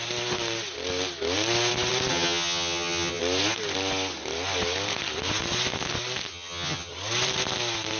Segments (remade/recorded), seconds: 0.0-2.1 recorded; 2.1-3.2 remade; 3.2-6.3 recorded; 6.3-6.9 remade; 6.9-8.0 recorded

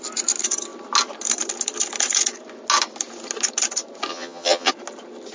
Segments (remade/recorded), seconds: 0.0-4.1 recorded; 4.1-4.7 remade; 4.7-5.3 recorded